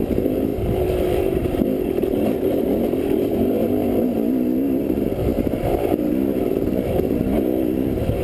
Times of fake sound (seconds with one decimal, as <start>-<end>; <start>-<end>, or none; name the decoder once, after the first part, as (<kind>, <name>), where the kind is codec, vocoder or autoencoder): 0.0-8.2 (vocoder, BigVGAN v2)